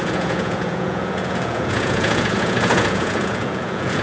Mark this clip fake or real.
fake